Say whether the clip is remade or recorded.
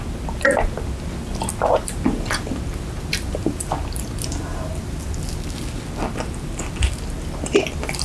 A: recorded